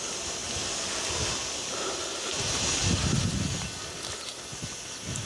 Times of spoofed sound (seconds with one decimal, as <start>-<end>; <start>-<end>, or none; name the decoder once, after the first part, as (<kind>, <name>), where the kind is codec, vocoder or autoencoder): none